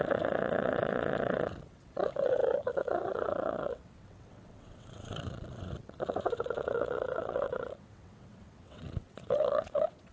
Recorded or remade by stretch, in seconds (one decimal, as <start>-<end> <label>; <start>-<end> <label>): 0.0-10.1 remade